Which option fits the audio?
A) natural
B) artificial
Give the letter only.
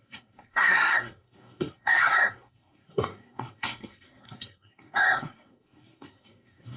B